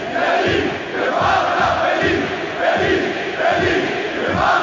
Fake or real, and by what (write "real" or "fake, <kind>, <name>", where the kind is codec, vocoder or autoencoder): fake, vocoder, Vocos